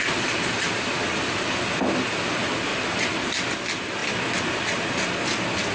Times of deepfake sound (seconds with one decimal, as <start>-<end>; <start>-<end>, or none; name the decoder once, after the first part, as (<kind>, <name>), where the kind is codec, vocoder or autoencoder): 2.7-3.3 (vocoder, BigVGAN v2)